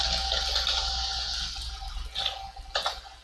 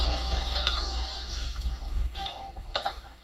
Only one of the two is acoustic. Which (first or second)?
first